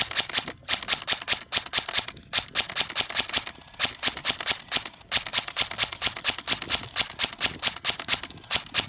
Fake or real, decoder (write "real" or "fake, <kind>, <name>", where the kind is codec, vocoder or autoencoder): real